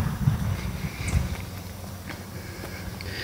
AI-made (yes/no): no